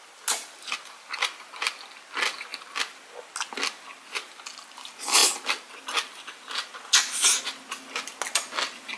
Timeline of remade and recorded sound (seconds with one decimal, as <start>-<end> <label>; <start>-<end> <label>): 0.0-9.0 recorded